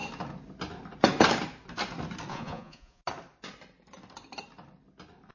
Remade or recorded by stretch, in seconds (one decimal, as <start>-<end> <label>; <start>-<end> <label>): 0.0-2.3 recorded; 2.3-3.0 remade; 3.0-5.3 recorded